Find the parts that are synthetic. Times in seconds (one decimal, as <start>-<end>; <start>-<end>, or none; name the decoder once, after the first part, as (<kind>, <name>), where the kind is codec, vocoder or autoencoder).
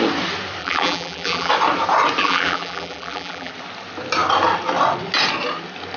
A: 0.6-1.5 (vocoder, BigVGAN v2); 2.2-3.5